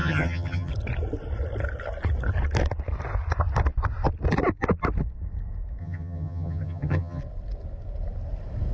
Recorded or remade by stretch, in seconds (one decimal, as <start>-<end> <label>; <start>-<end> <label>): 0.0-0.7 remade; 0.7-5.8 recorded; 5.8-7.2 remade; 7.2-8.7 recorded